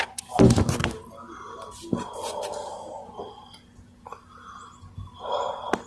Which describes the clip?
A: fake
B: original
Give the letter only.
B